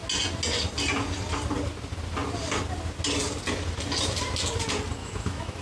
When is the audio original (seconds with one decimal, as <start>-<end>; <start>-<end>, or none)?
0.0-5.0